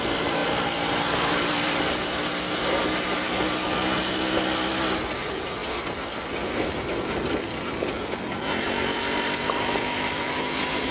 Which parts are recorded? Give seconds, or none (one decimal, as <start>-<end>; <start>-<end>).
0.0-10.9